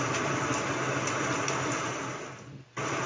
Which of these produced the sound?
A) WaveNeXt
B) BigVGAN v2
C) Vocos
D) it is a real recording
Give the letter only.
D